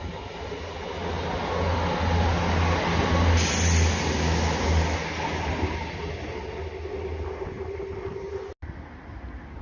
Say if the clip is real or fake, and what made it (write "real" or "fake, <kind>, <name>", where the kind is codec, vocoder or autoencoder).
real